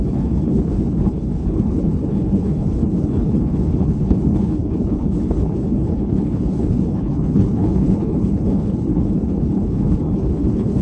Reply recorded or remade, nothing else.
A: remade